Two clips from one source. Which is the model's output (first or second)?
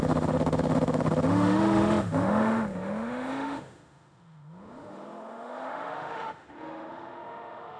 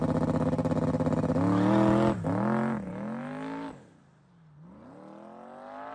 first